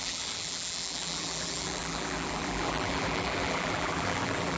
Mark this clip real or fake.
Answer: fake